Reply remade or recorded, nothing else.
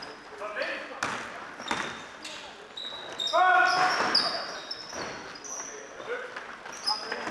recorded